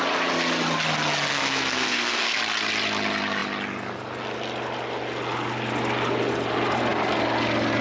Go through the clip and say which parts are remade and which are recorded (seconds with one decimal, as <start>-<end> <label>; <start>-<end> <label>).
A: 0.0-1.3 recorded; 1.3-2.4 remade; 2.4-7.8 recorded